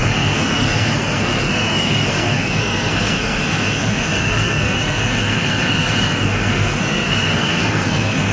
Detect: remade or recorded remade